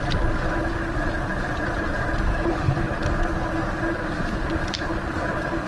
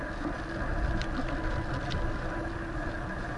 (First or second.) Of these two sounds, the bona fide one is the second